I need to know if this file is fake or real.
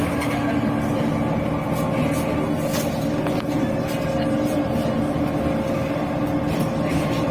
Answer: real